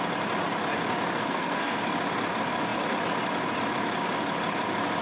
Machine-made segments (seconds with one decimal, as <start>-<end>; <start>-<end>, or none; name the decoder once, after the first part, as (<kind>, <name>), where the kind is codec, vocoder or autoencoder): 1.2-1.8 (codec, SNAC)